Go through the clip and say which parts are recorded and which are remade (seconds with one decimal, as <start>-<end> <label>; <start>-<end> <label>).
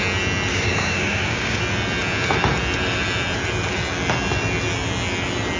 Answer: 0.0-0.5 recorded; 0.5-1.6 remade; 1.6-5.6 recorded